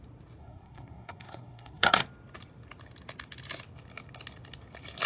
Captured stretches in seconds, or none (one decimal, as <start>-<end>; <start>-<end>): 0.0-0.4; 2.0-5.1

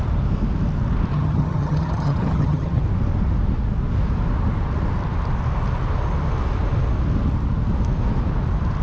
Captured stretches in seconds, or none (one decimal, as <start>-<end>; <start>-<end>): 0.0-1.1; 2.8-8.8

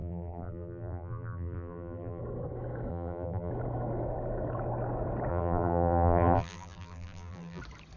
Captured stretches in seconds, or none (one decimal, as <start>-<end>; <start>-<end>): 2.2-2.9; 3.5-5.3; 7.6-8.0

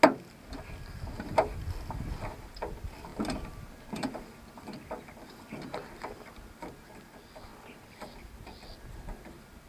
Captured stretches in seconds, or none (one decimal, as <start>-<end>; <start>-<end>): 0.0-9.7

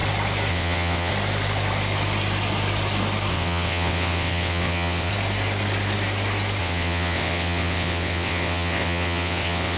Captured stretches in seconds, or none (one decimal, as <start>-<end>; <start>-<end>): 0.0-0.5; 1.1-3.3; 5.1-6.6

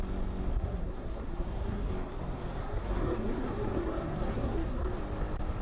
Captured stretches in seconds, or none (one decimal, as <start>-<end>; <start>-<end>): 0.0-0.5; 1.9-2.6; 5.0-5.6